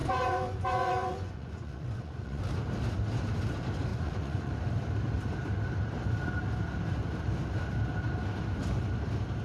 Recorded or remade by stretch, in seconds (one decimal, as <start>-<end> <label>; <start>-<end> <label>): 0.0-2.4 remade; 2.4-3.9 recorded; 3.9-4.5 remade; 4.5-9.4 recorded